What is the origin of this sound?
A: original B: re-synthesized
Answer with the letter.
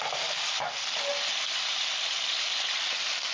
A